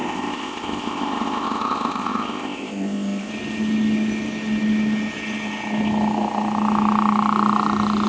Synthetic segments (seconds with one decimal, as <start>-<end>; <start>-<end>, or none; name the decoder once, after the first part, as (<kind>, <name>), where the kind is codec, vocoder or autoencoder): 0.0-3.3 (codec, ZipCodec)